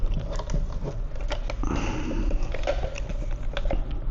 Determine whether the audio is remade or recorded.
recorded